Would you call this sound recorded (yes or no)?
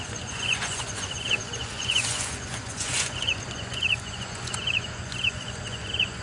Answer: no